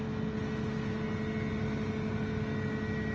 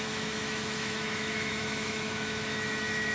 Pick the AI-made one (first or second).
second